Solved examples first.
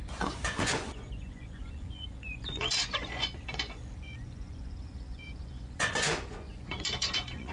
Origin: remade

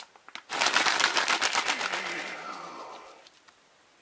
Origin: recorded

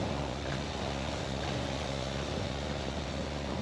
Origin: remade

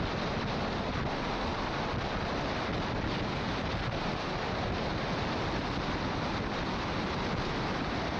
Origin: recorded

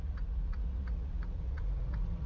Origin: remade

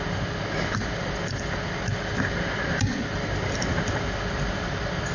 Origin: recorded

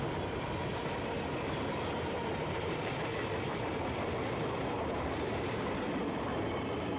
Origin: recorded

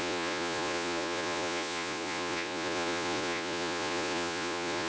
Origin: remade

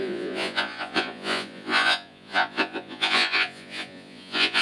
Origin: remade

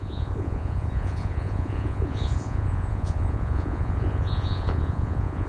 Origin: remade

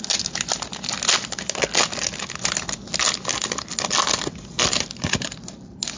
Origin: recorded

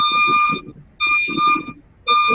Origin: recorded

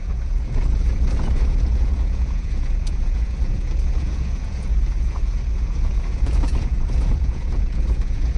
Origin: remade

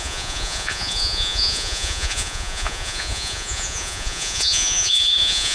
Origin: remade